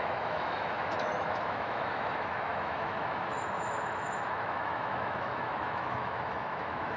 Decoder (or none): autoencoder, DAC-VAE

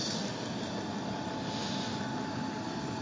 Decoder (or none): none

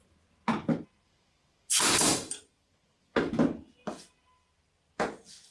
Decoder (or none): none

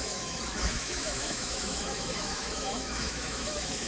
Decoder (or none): autoencoder, DAC-VAE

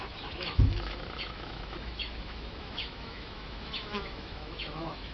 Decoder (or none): autoencoder, DAC-VAE